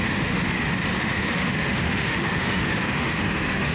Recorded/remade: remade